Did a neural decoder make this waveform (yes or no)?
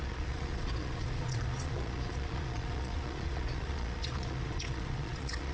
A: yes